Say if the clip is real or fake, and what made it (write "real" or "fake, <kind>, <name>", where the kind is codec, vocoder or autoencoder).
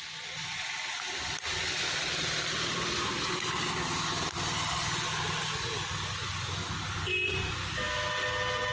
real